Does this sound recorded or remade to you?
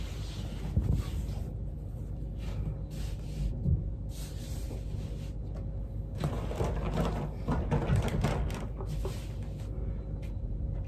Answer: recorded